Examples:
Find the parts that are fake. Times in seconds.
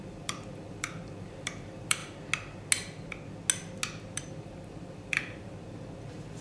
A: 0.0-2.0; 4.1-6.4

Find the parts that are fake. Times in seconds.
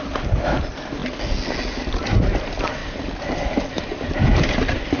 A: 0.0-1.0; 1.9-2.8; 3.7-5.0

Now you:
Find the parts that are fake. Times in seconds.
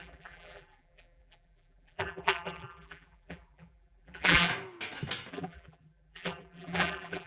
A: 0.0-4.5; 5.3-7.3